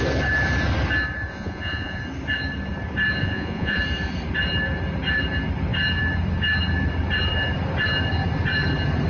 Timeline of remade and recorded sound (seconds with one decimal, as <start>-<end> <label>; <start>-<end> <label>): 0.0-1.3 recorded; 1.3-2.0 remade; 2.0-3.2 recorded; 3.2-3.8 remade; 3.8-9.1 recorded